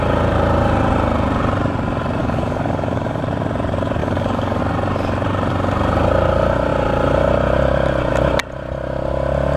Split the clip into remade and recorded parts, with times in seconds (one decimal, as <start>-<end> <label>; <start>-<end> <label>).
0.0-2.2 recorded; 2.2-3.2 remade; 3.2-4.0 recorded; 4.0-4.6 remade; 4.6-9.6 recorded